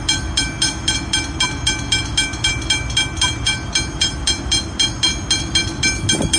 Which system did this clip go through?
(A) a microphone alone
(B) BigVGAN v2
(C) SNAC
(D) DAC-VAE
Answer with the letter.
A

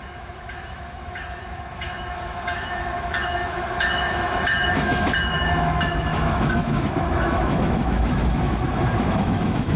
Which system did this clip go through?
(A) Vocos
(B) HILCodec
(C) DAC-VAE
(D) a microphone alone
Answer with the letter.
C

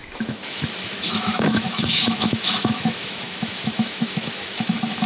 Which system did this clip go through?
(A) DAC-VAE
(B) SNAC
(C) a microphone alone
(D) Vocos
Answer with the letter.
A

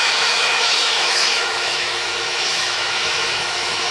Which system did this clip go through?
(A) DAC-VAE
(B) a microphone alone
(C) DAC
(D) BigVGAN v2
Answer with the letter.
A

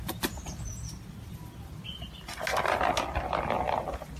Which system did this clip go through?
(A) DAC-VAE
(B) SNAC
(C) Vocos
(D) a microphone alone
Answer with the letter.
D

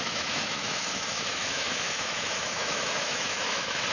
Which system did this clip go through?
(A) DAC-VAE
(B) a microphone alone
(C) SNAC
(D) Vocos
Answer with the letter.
A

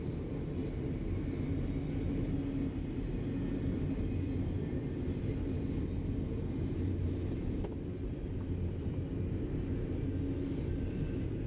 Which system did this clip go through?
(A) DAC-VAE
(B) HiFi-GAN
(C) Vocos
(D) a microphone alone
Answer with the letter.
D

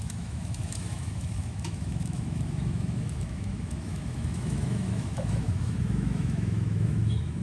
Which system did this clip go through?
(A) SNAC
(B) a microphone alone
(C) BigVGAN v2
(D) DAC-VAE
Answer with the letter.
D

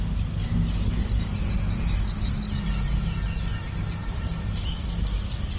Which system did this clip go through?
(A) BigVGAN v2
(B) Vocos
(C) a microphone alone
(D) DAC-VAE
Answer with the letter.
C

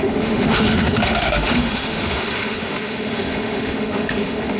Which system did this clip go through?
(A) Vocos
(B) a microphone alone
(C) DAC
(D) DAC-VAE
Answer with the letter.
D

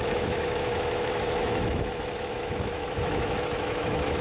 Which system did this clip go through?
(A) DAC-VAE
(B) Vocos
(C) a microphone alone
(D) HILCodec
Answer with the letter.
A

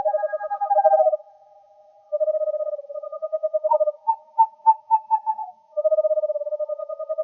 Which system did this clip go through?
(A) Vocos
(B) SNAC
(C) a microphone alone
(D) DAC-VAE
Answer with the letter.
D